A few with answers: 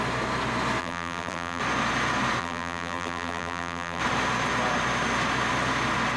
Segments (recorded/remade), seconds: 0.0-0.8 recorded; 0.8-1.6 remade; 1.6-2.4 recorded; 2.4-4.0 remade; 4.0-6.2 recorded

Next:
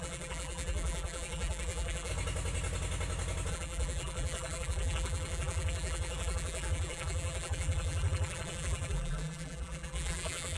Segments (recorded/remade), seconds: 0.0-2.1 remade; 2.1-3.5 recorded; 3.5-10.6 remade

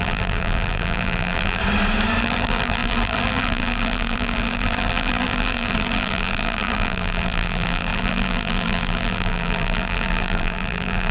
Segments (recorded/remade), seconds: 0.0-1.6 remade; 1.6-2.2 recorded; 2.2-11.1 remade